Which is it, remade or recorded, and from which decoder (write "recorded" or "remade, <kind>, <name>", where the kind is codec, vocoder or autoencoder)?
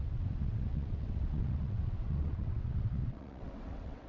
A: remade, vocoder, WaveNeXt